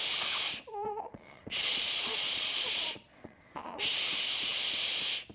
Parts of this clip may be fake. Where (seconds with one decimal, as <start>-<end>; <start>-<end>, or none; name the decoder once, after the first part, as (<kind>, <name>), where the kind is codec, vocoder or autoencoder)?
0.7-3.8 (vocoder, Vocos)